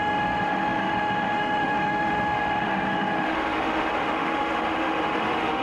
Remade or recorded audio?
remade